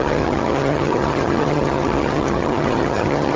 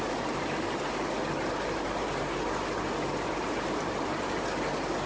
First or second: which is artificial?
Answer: first